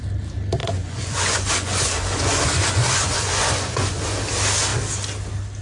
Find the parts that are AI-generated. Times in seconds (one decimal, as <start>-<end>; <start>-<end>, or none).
0.6-4.0